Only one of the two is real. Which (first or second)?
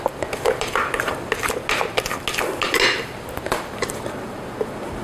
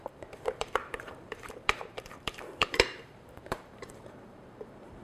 first